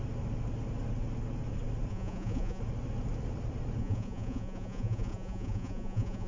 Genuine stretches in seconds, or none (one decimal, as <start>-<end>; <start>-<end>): 0.0-1.9; 2.6-3.8